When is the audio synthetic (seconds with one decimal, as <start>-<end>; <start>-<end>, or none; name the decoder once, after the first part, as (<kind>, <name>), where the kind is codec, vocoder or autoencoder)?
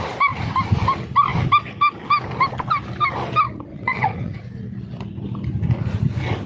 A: 3.7-4.4 (vocoder, WaveNeXt)